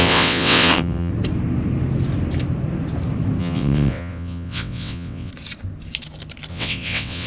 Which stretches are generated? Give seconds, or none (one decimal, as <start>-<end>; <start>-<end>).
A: 0.0-1.1; 3.4-5.3; 6.5-7.3